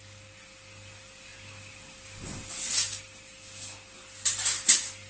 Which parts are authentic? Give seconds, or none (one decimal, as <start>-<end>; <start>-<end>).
0.0-5.1